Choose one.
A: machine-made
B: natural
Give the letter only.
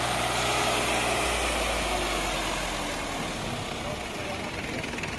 B